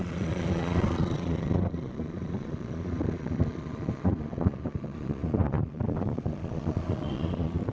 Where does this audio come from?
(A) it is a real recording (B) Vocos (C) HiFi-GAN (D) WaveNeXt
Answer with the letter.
B